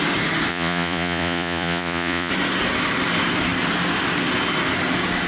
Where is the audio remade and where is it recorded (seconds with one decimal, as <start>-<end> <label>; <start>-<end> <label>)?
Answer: 0.0-0.5 recorded; 0.5-2.3 remade; 2.3-5.3 recorded